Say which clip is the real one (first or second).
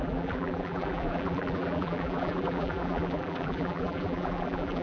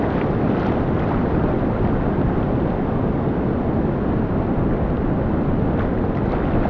second